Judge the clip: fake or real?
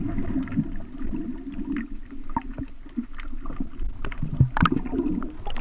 real